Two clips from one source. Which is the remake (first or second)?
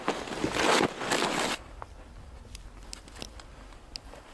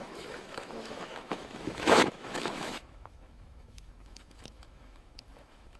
second